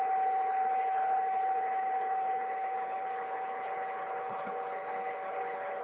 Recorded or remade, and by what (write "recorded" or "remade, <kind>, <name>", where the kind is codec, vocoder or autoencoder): remade, codec, HILCodec